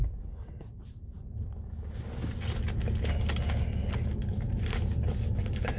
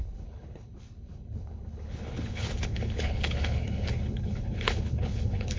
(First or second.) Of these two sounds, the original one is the first